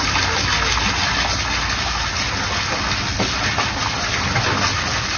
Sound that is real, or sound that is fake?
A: real